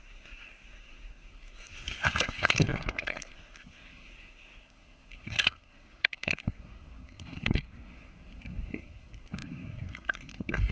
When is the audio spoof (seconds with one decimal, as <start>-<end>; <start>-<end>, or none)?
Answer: 0.0-10.7